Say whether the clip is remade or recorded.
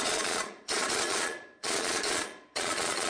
remade